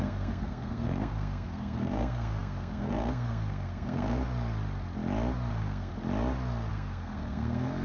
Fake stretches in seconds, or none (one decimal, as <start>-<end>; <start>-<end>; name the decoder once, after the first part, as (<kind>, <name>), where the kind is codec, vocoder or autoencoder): 0.0-4.2 (codec, SNAC); 5.5-5.9; 6.7-7.8